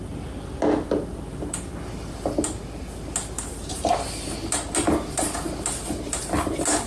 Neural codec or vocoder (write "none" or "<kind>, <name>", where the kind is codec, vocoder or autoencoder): none